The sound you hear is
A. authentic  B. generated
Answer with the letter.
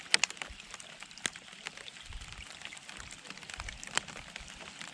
A